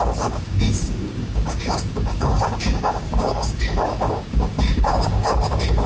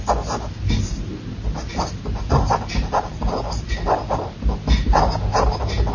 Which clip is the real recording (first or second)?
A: second